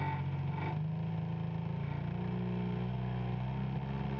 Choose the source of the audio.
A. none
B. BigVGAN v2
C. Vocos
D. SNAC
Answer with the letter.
A